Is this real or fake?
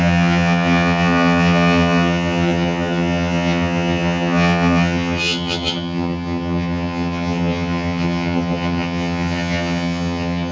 fake